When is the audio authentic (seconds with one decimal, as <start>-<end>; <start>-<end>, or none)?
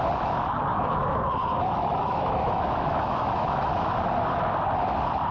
0.0-0.7; 3.9-5.3